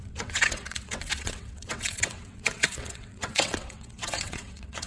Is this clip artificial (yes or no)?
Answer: yes